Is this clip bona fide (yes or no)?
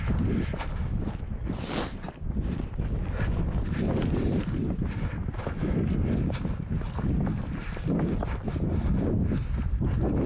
yes